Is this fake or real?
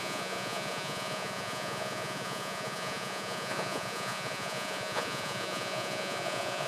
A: fake